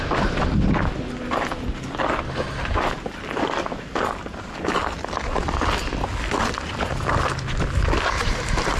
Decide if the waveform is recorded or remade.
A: recorded